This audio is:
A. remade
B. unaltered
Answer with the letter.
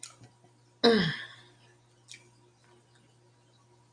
B